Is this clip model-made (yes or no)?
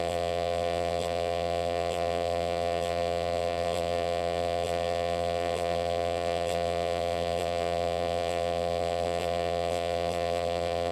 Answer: yes